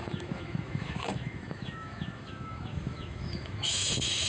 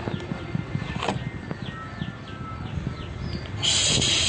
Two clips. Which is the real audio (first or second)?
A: second